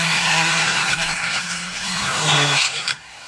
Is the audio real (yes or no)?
no